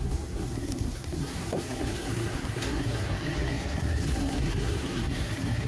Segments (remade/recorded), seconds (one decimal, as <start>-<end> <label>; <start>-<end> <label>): 0.0-5.7 remade